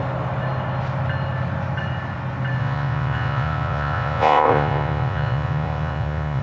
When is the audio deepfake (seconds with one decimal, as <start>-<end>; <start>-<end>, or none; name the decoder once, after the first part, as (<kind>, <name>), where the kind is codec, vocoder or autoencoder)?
2.6-6.4 (vocoder, Vocos)